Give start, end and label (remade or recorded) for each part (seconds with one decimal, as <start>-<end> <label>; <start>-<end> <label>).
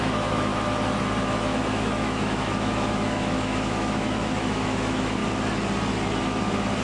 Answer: 0.0-0.5 remade; 0.5-1.2 recorded; 1.2-5.2 remade; 5.2-6.2 recorded; 6.2-6.8 remade